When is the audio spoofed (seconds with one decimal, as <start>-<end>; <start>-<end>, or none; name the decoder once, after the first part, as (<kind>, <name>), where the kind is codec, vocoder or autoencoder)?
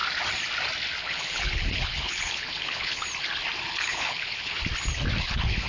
1.0-3.0 (codec, HILCodec); 3.6-4.6; 5.2-5.7